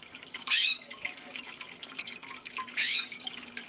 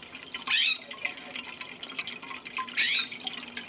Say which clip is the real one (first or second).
second